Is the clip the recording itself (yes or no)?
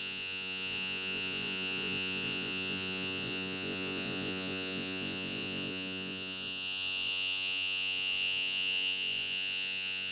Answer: no